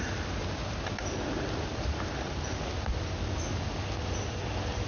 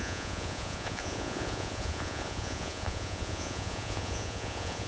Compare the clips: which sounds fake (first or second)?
second